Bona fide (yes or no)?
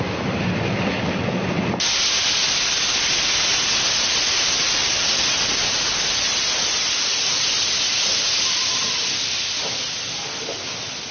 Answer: yes